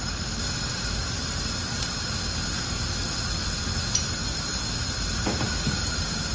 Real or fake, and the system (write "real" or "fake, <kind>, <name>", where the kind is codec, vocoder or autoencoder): real